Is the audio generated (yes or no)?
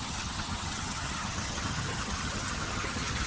yes